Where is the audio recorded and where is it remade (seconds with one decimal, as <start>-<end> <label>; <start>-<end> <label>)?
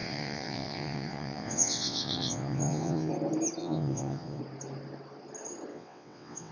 0.0-3.1 remade; 3.1-3.6 recorded; 3.6-4.4 remade; 4.4-5.7 recorded; 5.7-6.5 remade